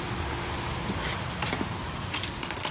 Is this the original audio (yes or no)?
yes